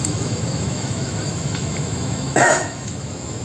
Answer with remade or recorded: remade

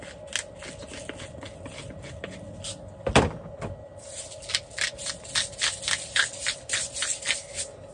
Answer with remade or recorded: recorded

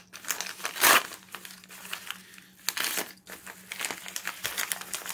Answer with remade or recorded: recorded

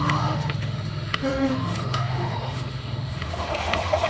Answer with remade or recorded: remade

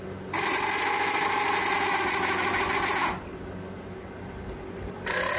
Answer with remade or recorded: recorded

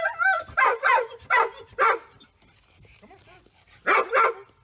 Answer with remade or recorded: recorded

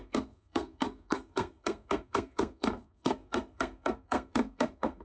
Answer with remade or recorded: remade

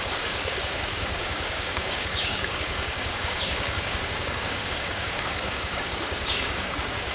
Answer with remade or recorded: remade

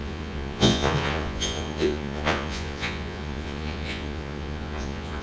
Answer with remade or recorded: remade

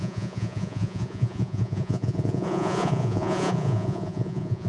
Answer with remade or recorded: remade